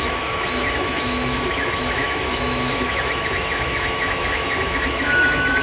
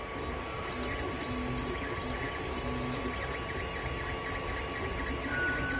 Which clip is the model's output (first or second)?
first